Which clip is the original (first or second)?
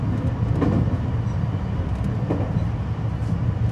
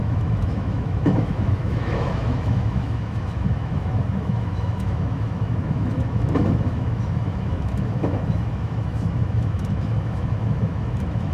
first